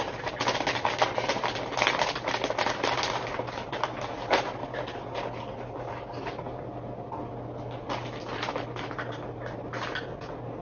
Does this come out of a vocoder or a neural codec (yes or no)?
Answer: no